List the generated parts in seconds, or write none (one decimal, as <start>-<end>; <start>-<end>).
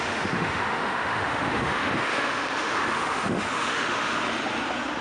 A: 0.0-4.1